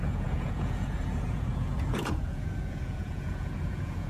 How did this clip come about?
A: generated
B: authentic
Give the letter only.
A